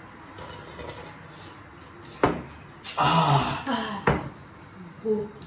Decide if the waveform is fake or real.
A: real